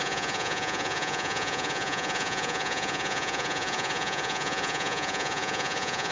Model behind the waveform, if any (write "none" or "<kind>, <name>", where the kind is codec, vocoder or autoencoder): vocoder, Vocos